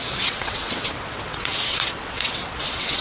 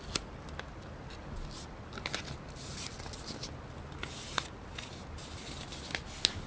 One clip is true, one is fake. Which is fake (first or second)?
first